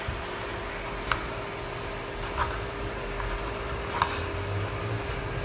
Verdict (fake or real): real